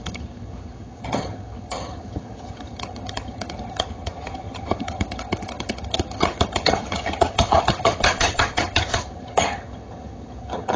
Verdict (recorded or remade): remade